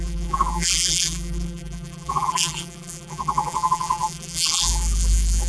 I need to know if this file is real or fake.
fake